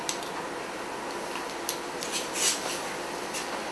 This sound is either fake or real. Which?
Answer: real